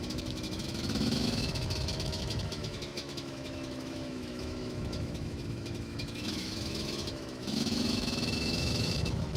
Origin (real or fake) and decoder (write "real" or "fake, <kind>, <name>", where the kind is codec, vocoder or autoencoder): fake, autoencoder, DAC-VAE